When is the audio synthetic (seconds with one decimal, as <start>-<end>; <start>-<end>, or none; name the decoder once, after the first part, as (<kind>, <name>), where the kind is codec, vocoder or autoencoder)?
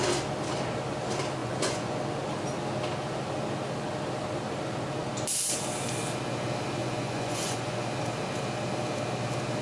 1.4-2.0 (vocoder, Vocos); 6.8-7.9